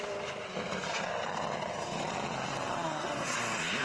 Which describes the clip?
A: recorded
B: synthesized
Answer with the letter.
A